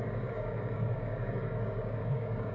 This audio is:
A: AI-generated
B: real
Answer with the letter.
A